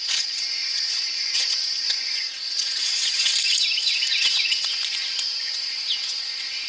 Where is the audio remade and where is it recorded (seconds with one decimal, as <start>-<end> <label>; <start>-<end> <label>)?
0.0-3.3 remade; 3.3-4.2 recorded; 4.2-4.8 remade; 4.8-5.4 recorded; 5.4-6.7 remade